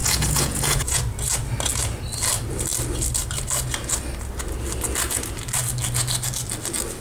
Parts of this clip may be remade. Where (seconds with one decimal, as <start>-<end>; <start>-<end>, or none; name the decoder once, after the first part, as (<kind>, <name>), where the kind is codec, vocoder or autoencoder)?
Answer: 0.0-1.0 (vocoder, Vocos)